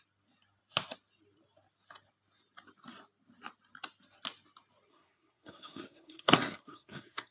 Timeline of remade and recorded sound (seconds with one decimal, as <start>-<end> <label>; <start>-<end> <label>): 0.0-4.9 recorded; 4.9-7.3 remade